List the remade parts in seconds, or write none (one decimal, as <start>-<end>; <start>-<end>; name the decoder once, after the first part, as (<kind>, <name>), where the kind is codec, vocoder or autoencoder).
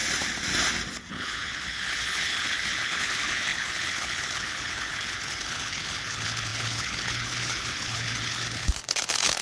1.1-9.4 (codec, HILCodec)